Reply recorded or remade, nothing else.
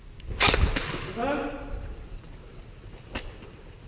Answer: recorded